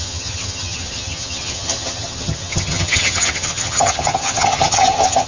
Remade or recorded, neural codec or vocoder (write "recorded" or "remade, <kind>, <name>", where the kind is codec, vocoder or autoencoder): remade, vocoder, HiFi-GAN